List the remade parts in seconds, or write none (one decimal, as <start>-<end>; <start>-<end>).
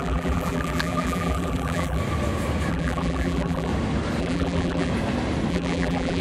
0.0-2.0; 2.7-3.7; 4.2-4.9; 5.5-6.2